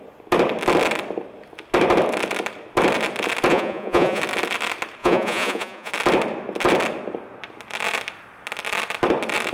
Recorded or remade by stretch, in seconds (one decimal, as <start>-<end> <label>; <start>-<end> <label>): 0.0-3.5 recorded; 3.5-4.2 remade; 4.2-5.0 recorded; 5.0-5.9 remade; 5.9-9.5 recorded